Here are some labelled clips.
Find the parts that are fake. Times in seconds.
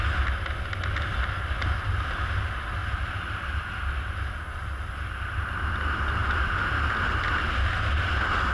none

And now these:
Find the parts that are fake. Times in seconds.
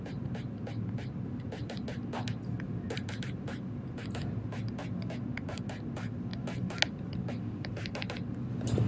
none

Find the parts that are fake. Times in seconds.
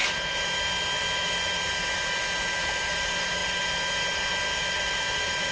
none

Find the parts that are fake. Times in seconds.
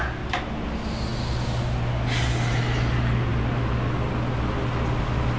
none